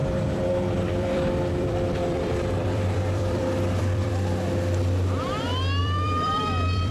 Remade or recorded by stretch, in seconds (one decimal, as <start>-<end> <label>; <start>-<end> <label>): 0.0-4.1 remade; 4.1-5.8 recorded; 5.8-6.9 remade